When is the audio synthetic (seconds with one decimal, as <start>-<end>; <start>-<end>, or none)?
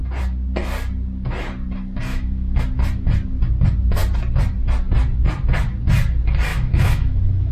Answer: 2.1-2.6; 6.5-7.5